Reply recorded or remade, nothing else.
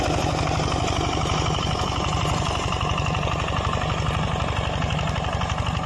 recorded